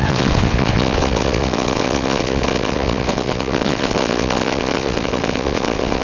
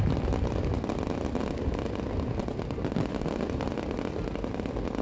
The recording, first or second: second